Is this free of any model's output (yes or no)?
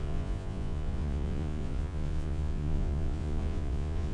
no